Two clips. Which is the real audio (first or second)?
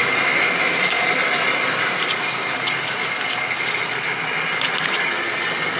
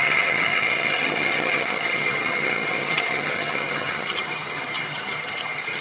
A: first